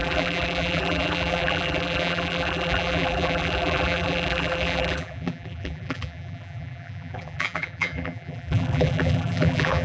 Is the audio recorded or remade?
remade